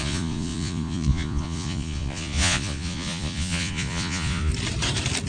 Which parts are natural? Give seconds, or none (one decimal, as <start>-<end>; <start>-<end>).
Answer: 4.5-5.3